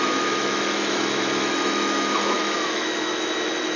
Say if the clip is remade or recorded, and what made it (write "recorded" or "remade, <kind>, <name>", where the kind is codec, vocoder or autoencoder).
remade, autoencoder, DAC-VAE